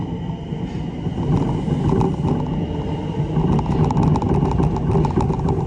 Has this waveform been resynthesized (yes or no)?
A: no